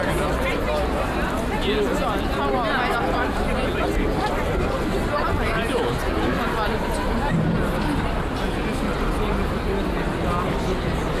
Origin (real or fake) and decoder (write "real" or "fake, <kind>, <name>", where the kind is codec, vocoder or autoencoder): real